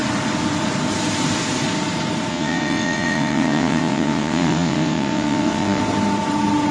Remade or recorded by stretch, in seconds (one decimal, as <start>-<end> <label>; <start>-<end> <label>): 0.0-2.3 recorded; 2.3-5.8 remade; 5.8-6.7 recorded